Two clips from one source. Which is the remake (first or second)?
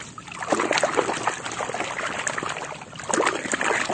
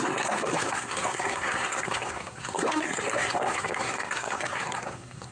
second